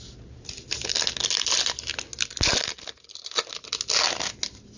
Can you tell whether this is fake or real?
real